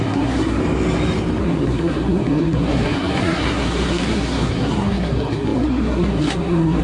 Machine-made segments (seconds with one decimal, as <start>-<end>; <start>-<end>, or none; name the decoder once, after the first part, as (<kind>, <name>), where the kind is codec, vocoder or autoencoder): 0.0-0.6 (codec, SNAC); 1.4-6.8